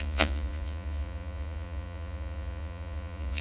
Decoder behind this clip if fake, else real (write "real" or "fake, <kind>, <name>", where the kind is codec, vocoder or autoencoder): fake, vocoder, Vocos